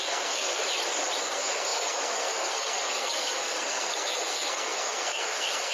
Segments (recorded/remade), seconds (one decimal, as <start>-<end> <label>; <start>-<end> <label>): 0.0-0.6 remade; 0.6-1.2 recorded; 1.2-5.7 remade